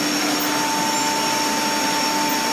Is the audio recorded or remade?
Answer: recorded